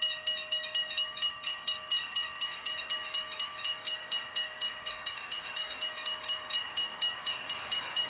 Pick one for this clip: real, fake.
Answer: fake